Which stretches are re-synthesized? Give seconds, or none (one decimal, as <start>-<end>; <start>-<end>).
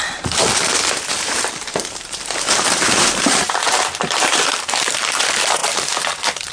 0.0-0.5; 1.2-6.5